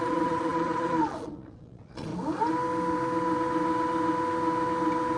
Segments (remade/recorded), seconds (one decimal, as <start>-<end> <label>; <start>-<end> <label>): 0.0-2.1 remade; 2.1-5.2 recorded